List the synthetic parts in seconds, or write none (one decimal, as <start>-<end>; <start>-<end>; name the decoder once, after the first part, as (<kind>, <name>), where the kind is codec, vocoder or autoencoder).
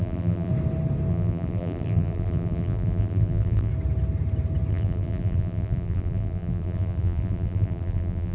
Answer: 0.0-0.5 (vocoder, BigVGAN v2); 1.1-3.7; 4.7-8.3